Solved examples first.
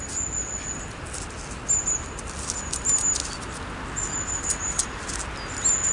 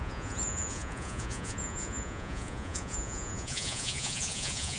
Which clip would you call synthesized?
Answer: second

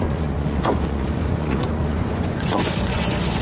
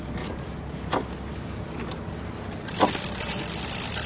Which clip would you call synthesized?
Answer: first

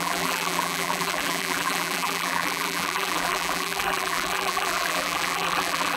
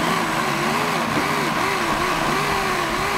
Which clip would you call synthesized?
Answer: first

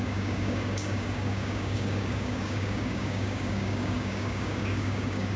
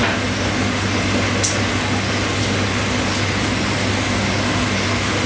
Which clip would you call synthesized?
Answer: first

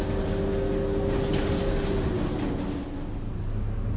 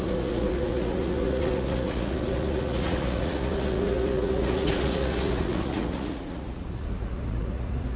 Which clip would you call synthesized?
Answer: second